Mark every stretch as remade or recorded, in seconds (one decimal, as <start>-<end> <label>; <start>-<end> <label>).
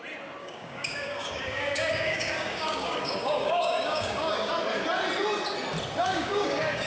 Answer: 0.0-0.4 recorded; 0.4-4.5 remade; 4.5-6.0 recorded; 6.0-6.9 remade